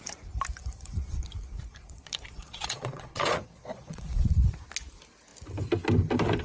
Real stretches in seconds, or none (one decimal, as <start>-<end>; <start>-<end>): 0.0-0.6; 4.4-6.4